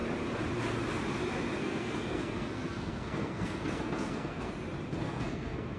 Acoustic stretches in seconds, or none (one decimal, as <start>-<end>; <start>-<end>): 0.0-1.6; 4.5-4.9